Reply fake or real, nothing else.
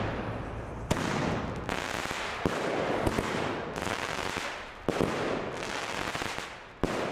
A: real